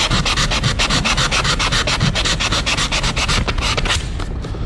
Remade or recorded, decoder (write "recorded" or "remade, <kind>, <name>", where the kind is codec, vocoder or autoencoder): recorded